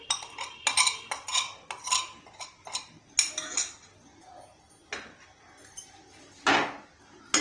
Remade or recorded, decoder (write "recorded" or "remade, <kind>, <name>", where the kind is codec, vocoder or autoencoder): recorded